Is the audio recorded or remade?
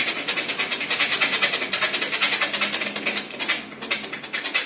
recorded